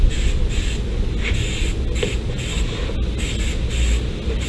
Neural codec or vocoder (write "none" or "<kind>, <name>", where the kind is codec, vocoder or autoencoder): none